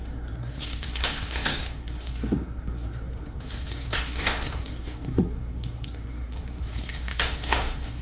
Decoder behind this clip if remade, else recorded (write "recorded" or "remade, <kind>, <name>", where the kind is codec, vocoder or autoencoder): remade, codec, SNAC